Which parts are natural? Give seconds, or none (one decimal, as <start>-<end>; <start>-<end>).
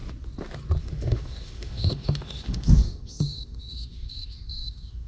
0.0-0.8